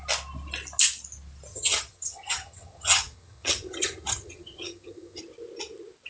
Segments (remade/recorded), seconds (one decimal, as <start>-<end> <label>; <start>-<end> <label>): 0.0-1.5 recorded; 1.5-5.2 remade; 5.2-6.1 recorded